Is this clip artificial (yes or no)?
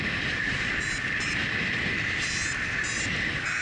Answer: no